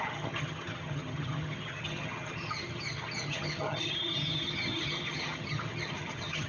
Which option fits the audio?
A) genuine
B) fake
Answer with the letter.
B